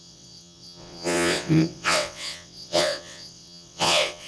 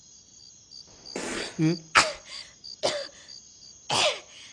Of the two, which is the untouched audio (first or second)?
second